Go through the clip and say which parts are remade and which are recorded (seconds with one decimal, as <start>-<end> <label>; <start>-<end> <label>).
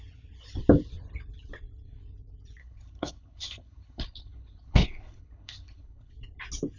0.0-2.6 recorded; 2.6-6.1 remade; 6.1-6.8 recorded